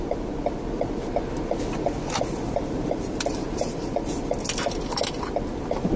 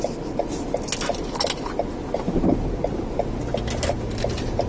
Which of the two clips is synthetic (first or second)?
first